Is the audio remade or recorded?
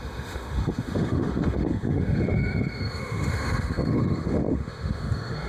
remade